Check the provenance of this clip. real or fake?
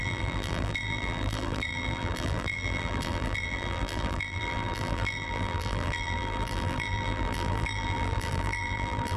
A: fake